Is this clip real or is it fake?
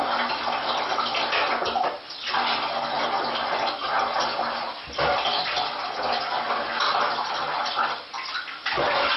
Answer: real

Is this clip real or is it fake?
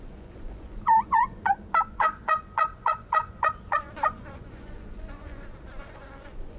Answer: fake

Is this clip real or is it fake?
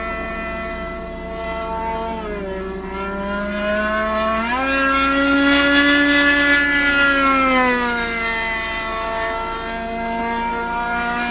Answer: real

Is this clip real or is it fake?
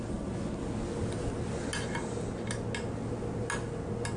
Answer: real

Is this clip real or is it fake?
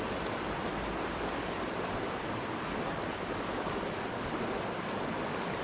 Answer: real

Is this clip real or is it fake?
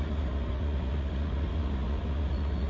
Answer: fake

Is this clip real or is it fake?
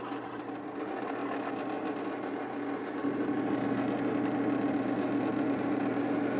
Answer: real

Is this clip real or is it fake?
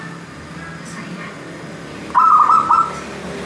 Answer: real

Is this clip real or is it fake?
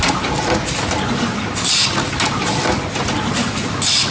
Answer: real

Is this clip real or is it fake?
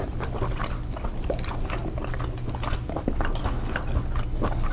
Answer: real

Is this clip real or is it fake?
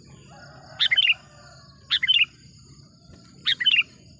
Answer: real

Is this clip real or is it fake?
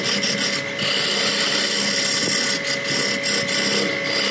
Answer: real